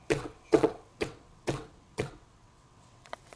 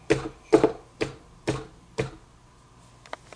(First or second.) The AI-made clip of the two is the first